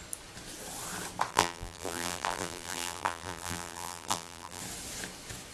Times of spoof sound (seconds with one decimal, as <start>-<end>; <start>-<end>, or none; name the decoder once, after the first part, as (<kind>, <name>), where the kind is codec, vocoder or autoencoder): 1.3-4.6 (vocoder, BigVGAN v2)